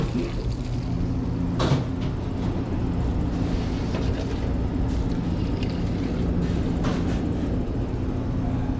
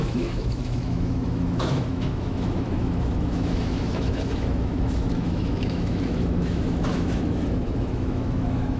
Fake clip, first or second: second